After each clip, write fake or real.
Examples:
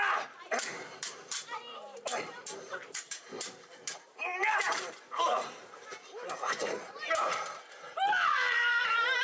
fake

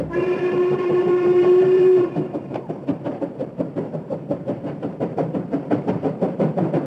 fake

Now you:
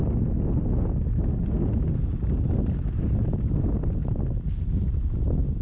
real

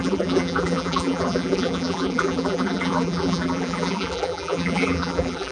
fake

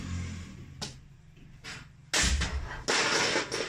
real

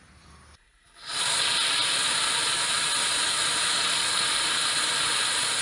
real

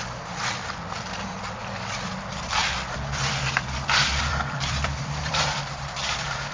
fake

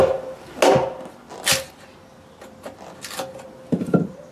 real